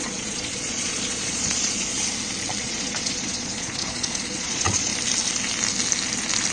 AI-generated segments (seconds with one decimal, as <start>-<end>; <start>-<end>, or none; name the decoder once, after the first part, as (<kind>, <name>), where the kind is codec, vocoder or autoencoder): 0.0-1.9 (vocoder, Vocos); 2.6-4.9